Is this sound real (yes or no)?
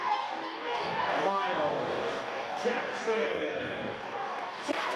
no